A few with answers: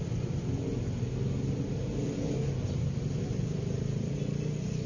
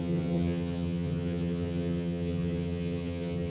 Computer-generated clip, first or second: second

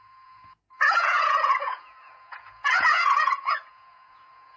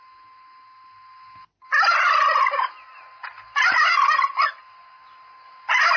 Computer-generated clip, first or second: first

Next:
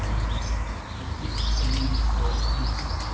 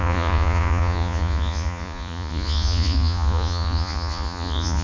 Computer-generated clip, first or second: second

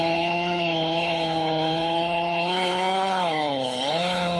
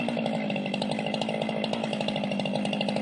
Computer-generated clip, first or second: first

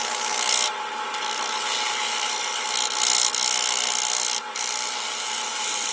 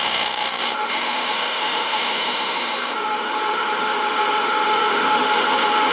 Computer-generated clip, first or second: second